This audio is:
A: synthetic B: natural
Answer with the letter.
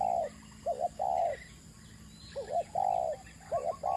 B